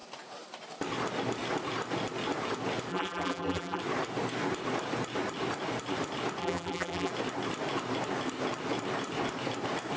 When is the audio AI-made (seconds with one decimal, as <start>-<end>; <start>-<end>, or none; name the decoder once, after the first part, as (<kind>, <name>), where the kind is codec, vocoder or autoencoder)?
2.9-3.8 (vocoder, BigVGAN v2); 6.4-7.1